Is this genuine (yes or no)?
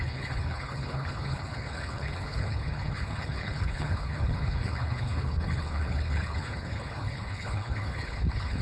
no